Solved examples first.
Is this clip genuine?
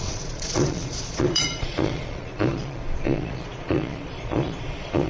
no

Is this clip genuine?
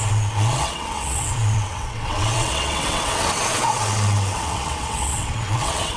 no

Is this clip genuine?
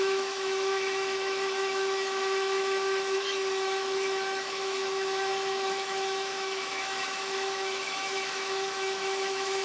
no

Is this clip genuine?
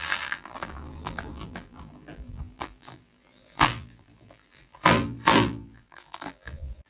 no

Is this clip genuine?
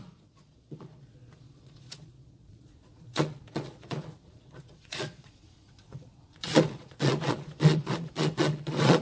no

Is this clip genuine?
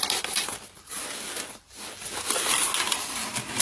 yes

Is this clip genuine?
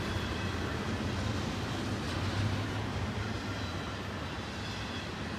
yes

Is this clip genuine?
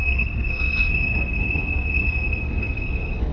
no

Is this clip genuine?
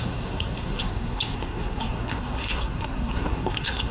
no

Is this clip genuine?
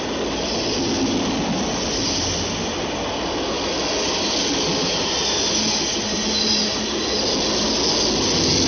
yes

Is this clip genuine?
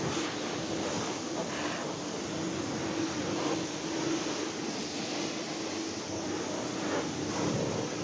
yes